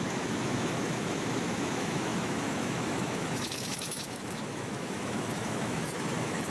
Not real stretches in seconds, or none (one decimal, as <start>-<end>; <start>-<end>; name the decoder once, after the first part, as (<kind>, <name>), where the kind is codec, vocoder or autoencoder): 0.0-6.5 (autoencoder, DAC-VAE)